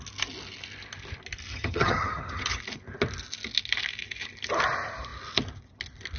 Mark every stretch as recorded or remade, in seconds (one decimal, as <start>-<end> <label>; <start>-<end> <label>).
0.0-1.5 recorded; 1.5-2.6 remade; 2.6-6.2 recorded